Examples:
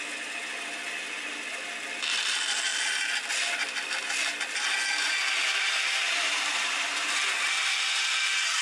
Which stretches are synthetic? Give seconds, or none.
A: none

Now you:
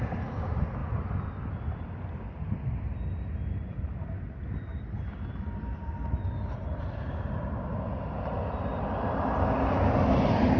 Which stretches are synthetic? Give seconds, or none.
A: none

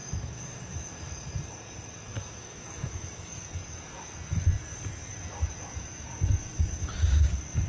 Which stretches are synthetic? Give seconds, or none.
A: 0.0-1.1 (autoencoder, DAC-VAE); 2.1-3.1

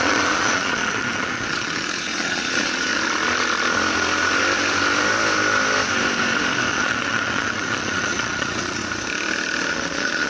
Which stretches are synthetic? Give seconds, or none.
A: 0.0-2.9 (vocoder, Vocos); 6.7-8.8; 9.7-10.3

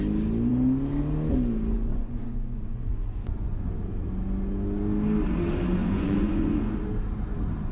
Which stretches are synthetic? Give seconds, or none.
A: 1.9-3.7 (vocoder, Vocos); 5.8-6.7